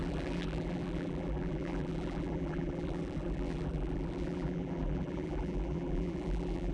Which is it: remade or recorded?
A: remade